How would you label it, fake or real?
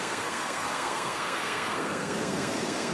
fake